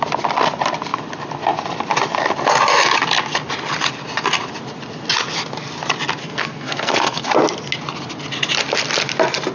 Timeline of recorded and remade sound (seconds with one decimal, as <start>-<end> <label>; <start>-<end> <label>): 0.0-6.2 recorded; 6.2-7.3 remade; 7.3-9.5 recorded